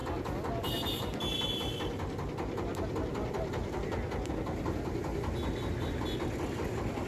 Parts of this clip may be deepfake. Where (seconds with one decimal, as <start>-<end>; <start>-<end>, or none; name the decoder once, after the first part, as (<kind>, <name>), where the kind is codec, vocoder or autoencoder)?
none